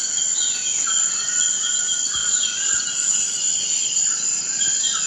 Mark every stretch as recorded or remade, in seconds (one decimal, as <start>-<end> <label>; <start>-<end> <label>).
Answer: 0.0-2.2 recorded; 2.2-5.1 remade